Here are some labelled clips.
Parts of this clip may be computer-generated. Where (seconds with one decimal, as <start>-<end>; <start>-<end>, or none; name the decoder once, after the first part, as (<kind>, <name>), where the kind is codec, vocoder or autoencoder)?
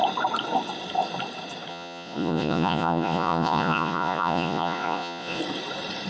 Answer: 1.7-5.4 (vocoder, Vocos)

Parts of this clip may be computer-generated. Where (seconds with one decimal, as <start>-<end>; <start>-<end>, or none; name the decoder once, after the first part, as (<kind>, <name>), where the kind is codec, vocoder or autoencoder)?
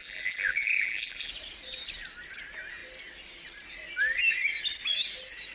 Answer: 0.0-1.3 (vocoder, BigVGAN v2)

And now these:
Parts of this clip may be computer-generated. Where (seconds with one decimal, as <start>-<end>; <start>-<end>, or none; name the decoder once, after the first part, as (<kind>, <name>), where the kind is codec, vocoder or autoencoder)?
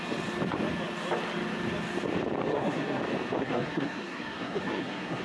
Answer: 2.5-3.0 (codec, SNAC); 3.4-5.2